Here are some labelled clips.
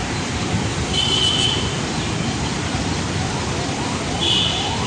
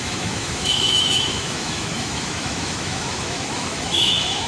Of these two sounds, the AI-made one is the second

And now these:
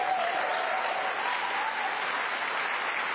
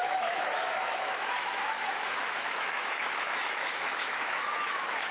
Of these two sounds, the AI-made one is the second